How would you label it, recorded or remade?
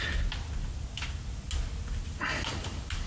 recorded